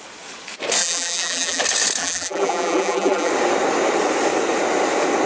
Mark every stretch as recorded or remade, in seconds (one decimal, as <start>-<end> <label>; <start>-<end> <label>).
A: 0.0-0.8 recorded; 0.8-1.6 remade; 1.6-2.0 recorded; 2.0-3.3 remade; 3.3-5.3 recorded